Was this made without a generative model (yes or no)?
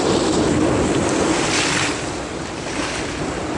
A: yes